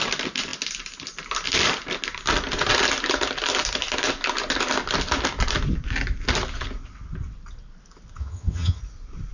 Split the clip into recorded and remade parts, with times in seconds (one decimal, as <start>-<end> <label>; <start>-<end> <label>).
0.0-8.2 recorded; 8.2-8.8 remade; 8.8-9.3 recorded